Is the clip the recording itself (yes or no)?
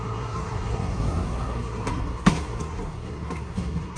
no